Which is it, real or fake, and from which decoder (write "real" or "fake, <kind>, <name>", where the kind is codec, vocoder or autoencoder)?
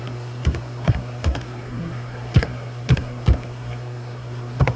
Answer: fake, codec, SNAC